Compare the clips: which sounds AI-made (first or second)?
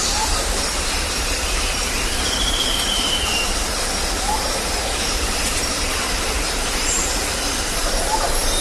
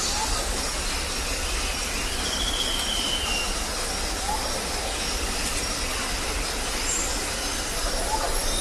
first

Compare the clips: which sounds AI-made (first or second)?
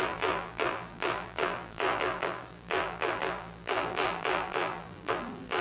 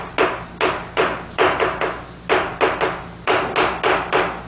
first